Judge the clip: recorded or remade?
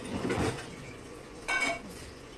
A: remade